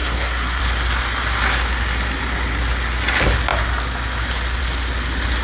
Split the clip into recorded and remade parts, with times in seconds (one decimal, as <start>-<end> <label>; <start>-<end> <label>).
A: 0.0-0.6 remade; 0.6-5.4 recorded